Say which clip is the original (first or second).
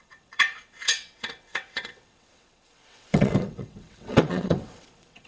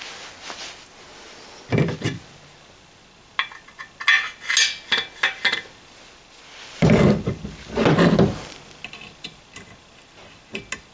second